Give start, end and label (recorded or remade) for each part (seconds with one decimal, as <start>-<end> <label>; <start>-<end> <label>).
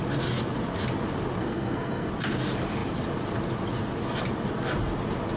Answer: 0.0-1.4 recorded; 1.4-2.1 remade; 2.1-5.4 recorded